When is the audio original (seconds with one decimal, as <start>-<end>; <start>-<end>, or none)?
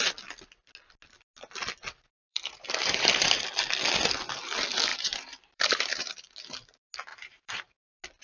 0.0-2.3; 3.5-4.9; 6.1-7.1; 7.7-8.2